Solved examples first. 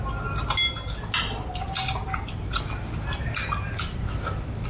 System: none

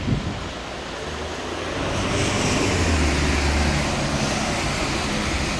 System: none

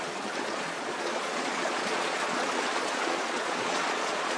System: vocoder, Vocos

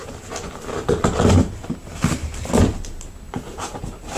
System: none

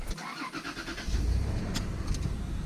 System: none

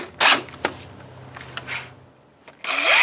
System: none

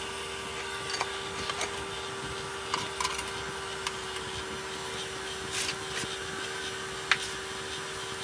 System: none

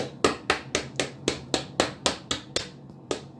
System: none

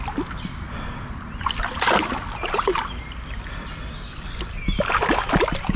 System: none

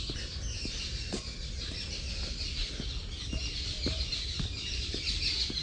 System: none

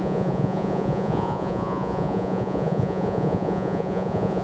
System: vocoder, Vocos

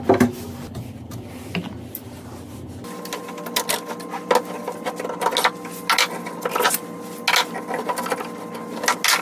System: none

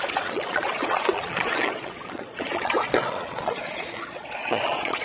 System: vocoder, Vocos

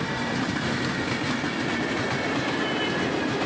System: none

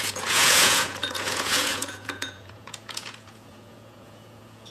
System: vocoder, Vocos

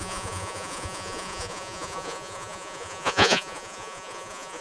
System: vocoder, Vocos